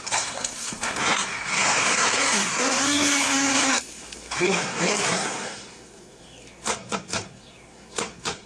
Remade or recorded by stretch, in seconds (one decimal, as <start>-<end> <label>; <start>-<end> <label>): 0.0-8.5 remade